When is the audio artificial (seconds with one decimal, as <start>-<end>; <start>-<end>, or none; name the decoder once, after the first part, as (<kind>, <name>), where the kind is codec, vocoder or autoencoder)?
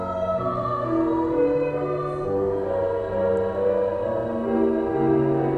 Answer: none